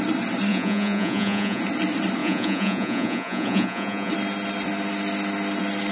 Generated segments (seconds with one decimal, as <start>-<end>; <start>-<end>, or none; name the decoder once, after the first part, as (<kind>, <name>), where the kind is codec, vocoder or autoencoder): 0.5-1.6 (vocoder, Vocos); 2.2-4.1